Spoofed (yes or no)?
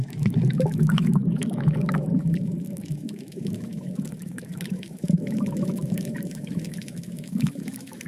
yes